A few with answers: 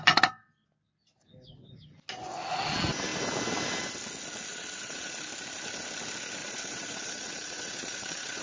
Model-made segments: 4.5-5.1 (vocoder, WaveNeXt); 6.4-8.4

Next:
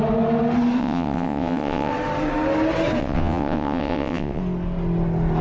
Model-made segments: 0.8-1.9 (vocoder, WaveNeXt); 3.0-4.4